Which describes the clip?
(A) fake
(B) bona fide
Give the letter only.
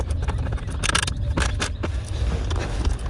B